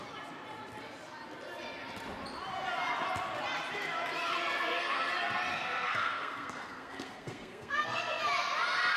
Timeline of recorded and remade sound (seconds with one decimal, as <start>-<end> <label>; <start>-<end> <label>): 0.0-4.3 recorded; 4.3-5.1 remade; 5.1-5.5 recorded; 5.5-8.2 remade; 8.2-9.0 recorded